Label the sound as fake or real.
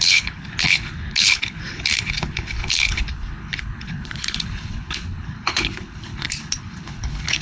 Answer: fake